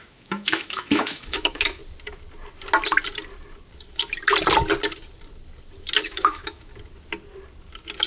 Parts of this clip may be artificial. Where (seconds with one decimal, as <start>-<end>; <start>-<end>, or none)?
0.0-1.8; 6.0-6.7

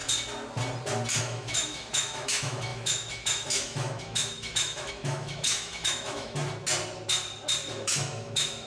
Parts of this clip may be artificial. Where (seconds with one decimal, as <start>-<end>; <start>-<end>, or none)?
1.2-6.4; 7.7-8.7

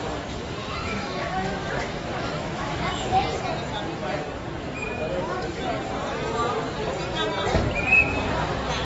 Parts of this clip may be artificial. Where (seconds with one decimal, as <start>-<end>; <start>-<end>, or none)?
0.6-3.4

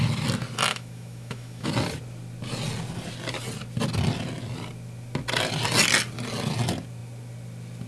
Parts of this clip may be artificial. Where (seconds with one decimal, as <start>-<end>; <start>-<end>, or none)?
0.7-1.7

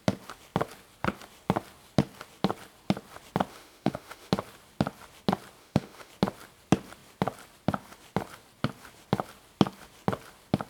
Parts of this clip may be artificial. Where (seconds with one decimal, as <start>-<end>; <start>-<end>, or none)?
3.5-4.3; 5.6-6.1

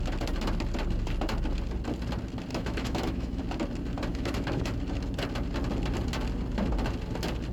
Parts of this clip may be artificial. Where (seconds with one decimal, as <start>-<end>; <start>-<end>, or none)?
2.5-3.4; 4.1-4.7

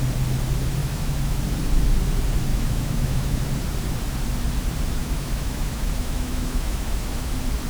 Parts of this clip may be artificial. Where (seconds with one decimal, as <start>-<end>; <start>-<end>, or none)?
0.8-1.4; 2.5-3.4; 5.0-7.3

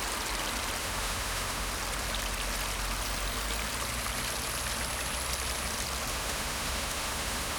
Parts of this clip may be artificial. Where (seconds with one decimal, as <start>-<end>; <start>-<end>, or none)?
0.8-1.7; 6.1-7.6